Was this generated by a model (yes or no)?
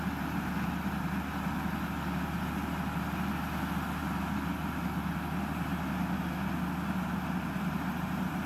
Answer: no